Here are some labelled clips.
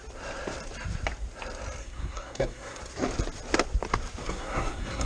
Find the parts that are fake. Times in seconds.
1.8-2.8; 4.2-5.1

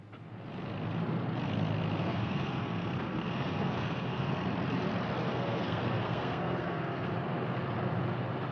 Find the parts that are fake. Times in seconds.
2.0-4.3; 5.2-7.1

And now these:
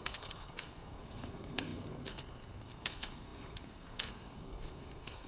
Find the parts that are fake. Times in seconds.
0.0-5.3

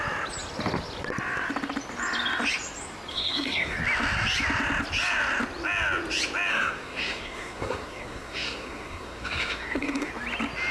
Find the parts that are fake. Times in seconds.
3.1-3.8; 6.5-10.1